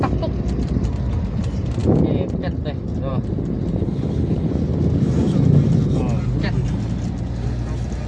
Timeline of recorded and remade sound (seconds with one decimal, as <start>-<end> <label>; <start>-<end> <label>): 0.0-3.8 recorded; 3.8-4.5 remade; 4.5-8.1 recorded